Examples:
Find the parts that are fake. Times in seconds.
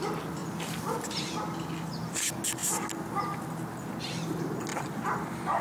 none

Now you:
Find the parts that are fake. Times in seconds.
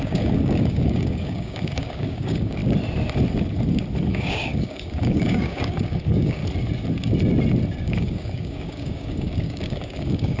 0.0-2.6 (codec, DAC); 4.1-6.4; 7.8-10.4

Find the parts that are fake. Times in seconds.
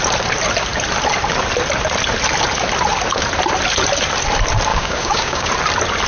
4.7-5.5 (codec, DAC)